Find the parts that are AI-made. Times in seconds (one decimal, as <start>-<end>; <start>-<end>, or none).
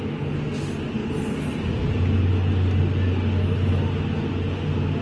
1.0-2.0